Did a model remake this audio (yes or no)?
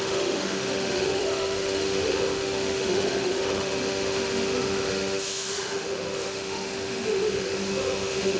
yes